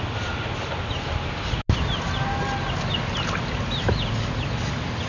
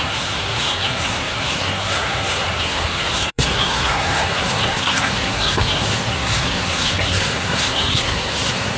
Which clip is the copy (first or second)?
second